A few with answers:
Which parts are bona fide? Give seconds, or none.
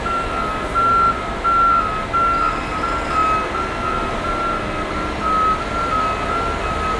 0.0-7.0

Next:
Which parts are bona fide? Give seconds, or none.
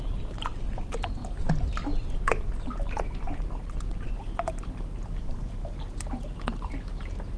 0.0-7.4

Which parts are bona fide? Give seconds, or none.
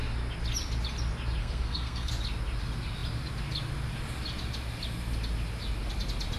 0.0-1.4; 2.1-6.4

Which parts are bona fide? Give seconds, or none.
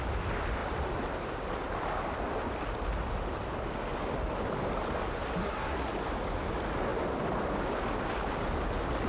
0.0-5.4; 5.9-9.1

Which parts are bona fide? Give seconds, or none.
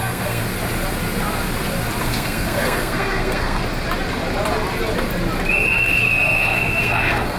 0.4-2.0; 3.6-5.7